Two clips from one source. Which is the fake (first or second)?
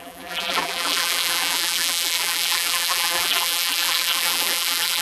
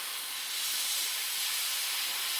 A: first